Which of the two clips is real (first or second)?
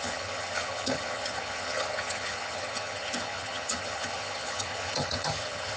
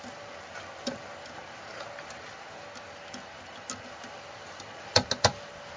second